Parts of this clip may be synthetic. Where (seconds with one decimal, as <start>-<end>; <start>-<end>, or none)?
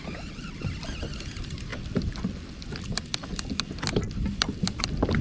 none